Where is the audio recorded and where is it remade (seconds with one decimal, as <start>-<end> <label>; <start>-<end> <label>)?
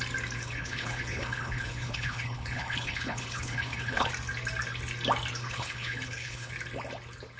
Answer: 0.0-0.4 recorded; 0.4-4.1 remade; 4.1-5.4 recorded; 5.4-6.5 remade; 6.5-7.4 recorded